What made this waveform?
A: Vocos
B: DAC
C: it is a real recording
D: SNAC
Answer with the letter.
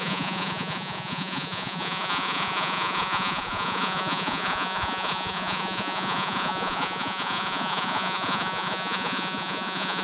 A